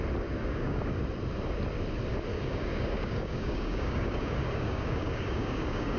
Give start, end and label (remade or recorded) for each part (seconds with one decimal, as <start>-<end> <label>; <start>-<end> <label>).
0.0-0.4 recorded; 0.4-0.9 remade; 0.9-2.3 recorded; 2.3-6.0 remade